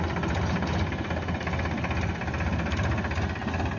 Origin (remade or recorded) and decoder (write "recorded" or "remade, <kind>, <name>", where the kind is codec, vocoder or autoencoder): recorded